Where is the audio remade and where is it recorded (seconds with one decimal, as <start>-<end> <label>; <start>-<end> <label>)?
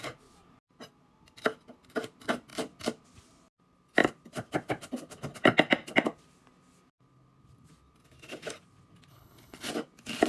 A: 0.0-9.1 recorded; 9.1-9.7 remade; 9.7-10.3 recorded